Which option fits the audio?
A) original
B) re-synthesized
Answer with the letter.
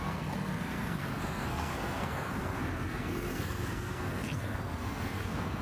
B